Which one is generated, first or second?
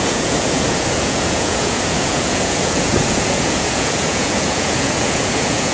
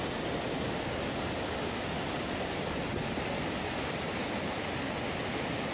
first